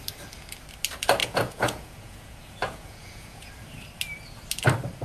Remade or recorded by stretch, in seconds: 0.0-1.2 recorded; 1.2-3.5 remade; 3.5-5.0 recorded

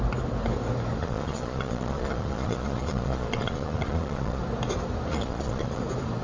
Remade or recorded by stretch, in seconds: 0.0-1.0 recorded; 1.0-4.4 remade; 4.4-5.1 recorded; 5.1-5.8 remade; 5.8-6.2 recorded

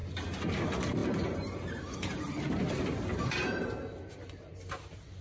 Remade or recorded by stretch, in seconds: 0.0-5.2 recorded